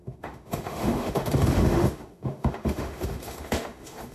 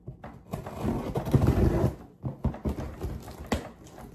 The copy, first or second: first